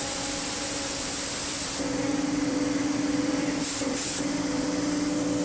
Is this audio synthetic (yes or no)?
yes